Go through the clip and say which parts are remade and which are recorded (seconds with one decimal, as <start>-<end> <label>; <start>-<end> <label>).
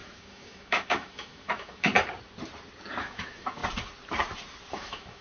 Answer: 0.0-1.9 remade; 1.9-3.0 recorded; 3.0-3.6 remade; 3.6-4.7 recorded; 4.7-5.2 remade